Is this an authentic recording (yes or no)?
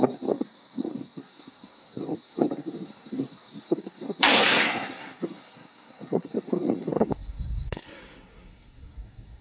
no